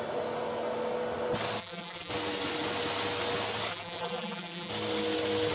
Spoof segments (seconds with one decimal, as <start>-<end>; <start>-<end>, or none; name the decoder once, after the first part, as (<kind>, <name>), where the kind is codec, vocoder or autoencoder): 1.6-2.1 (vocoder, BigVGAN v2); 3.7-4.7